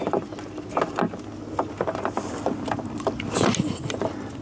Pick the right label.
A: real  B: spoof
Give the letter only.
A